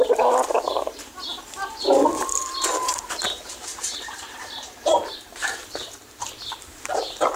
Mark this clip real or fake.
fake